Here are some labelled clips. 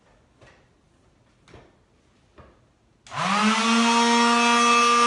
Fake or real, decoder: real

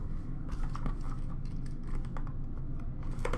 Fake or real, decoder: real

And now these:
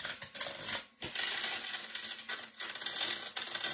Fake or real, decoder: real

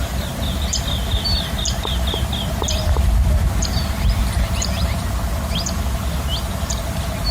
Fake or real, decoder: fake, vocoder, BigVGAN v2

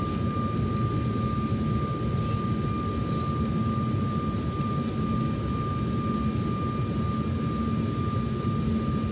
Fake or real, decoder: real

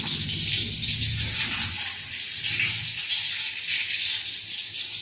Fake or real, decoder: real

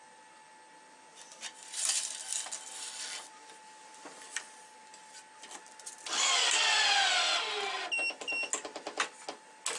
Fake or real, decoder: real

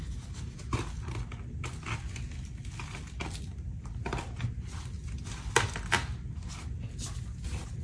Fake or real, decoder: real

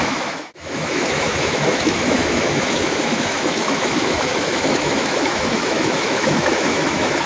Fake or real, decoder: fake, autoencoder, DAC-VAE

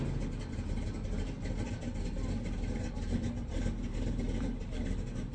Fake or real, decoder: real